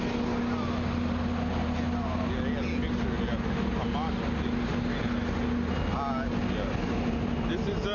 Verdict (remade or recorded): recorded